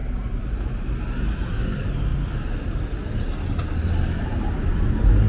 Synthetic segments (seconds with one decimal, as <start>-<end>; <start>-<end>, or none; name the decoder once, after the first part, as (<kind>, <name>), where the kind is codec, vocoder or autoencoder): none